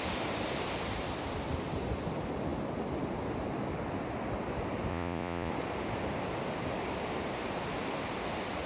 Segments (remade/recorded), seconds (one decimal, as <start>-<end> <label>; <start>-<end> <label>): 0.0-4.9 recorded; 4.9-5.5 remade; 5.5-8.7 recorded

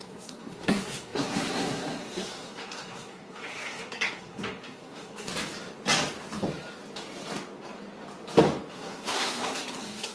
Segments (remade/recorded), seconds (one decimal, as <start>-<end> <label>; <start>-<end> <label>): 0.0-5.3 remade; 5.3-8.7 recorded; 8.7-10.1 remade